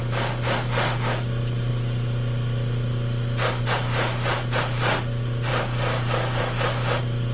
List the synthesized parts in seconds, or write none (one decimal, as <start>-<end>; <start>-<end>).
none